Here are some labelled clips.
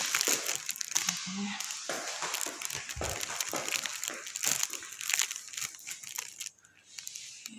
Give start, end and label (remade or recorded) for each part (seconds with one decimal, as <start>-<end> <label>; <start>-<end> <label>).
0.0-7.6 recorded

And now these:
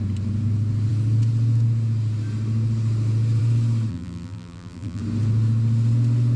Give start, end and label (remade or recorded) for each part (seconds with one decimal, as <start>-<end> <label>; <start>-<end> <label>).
0.0-3.9 recorded; 3.9-5.0 remade; 5.0-6.4 recorded

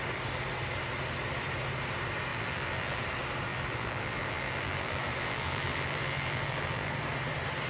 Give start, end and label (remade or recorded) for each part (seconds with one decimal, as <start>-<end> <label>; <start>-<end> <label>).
0.0-2.3 recorded; 2.3-3.0 remade; 3.0-3.5 recorded; 3.5-6.9 remade; 6.9-7.7 recorded